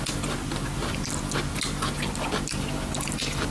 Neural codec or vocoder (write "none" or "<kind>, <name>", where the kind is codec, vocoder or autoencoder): none